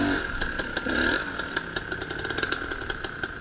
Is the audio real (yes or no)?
yes